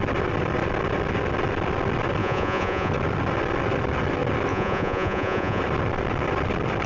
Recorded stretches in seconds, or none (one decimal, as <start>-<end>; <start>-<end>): 0.0-2.2; 2.9-4.5; 5.6-6.9